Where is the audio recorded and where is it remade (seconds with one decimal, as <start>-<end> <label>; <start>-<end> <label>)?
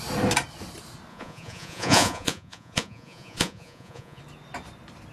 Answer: 0.0-1.1 recorded; 1.1-4.2 remade; 4.2-5.1 recorded